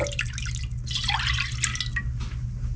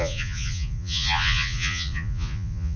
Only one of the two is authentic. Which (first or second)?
first